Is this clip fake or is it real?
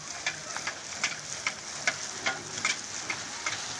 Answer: real